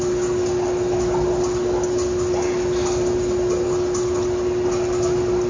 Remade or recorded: recorded